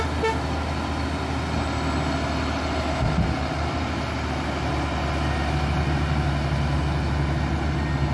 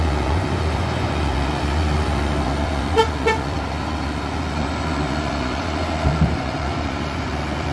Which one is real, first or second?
first